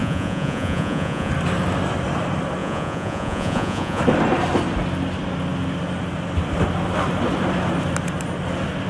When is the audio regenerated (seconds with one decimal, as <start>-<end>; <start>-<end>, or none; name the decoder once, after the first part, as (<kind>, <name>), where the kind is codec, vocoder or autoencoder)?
0.0-1.3 (vocoder, Vocos); 2.6-4.0